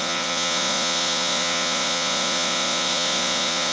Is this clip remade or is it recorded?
remade